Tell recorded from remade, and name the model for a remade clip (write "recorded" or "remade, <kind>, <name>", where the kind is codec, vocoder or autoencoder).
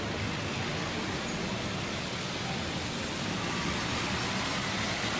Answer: recorded